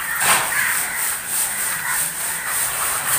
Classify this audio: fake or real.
fake